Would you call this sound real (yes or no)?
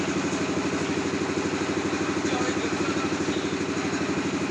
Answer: yes